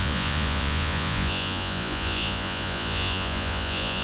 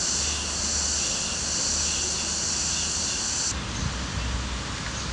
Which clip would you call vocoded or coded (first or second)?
first